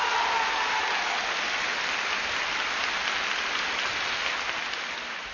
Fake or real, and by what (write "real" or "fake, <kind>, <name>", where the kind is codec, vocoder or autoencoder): real